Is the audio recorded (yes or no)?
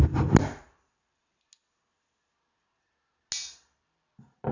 yes